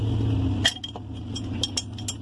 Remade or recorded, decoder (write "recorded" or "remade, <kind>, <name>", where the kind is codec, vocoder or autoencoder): recorded